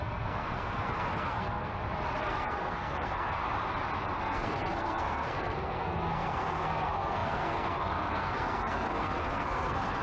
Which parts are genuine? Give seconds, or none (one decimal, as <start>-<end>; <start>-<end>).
1.7-2.2; 3.4-4.2